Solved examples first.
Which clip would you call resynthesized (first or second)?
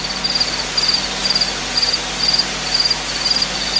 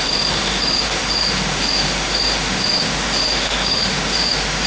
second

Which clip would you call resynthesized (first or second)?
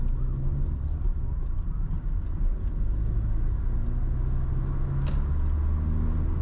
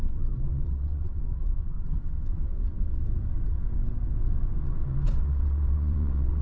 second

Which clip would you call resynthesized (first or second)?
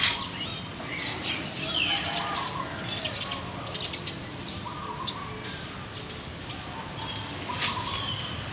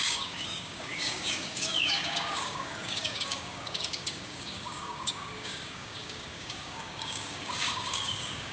second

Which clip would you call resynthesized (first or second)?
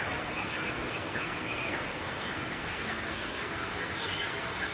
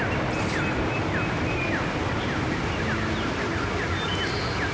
first